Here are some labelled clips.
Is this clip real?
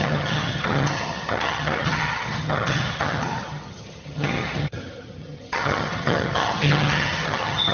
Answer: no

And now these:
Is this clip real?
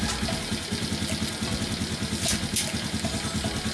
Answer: yes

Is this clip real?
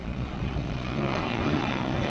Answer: no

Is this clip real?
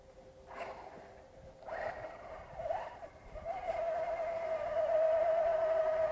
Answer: yes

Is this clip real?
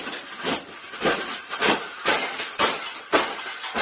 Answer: yes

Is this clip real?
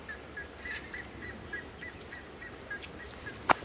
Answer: yes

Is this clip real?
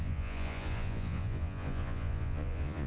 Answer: no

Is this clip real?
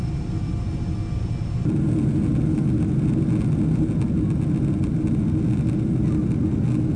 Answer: yes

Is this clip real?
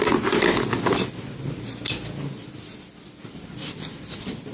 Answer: yes